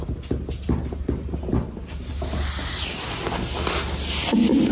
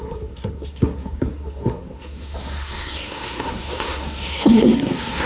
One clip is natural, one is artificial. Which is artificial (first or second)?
second